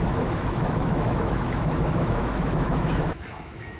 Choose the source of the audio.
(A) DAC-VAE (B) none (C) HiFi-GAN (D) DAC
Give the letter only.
A